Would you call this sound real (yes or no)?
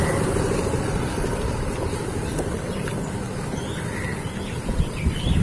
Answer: yes